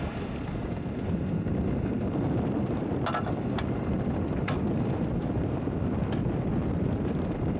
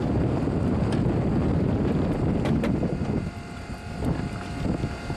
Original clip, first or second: second